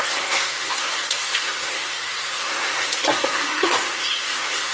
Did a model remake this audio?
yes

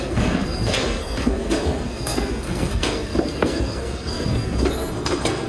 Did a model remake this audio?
yes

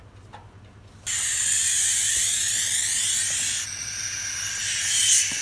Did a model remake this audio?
no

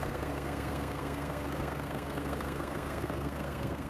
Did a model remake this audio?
yes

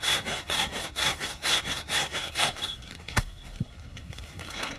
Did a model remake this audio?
yes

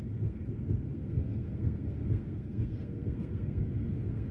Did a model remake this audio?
yes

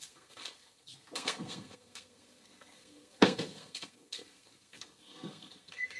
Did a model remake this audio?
yes